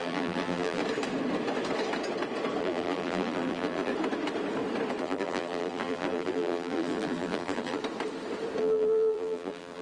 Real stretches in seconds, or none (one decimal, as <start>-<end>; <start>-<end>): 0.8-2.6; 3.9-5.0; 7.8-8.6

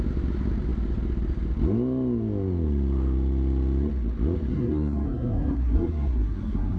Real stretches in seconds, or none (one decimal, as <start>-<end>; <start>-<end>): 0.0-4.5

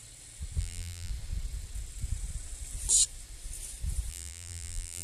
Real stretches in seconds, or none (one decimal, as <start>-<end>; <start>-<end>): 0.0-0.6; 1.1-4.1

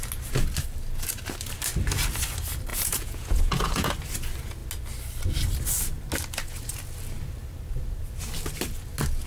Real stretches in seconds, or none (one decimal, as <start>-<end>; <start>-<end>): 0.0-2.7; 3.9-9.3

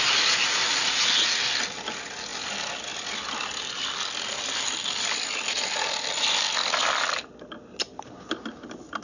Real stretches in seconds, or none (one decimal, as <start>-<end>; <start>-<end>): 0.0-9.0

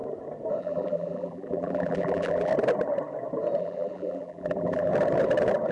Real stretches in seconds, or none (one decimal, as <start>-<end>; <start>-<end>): 0.0-0.6; 2.5-3.6; 4.9-5.7

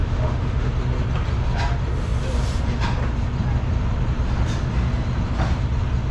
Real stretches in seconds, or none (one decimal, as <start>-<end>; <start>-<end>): 0.7-6.1